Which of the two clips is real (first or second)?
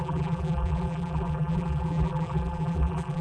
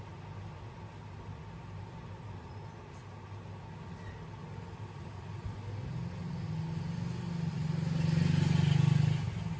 second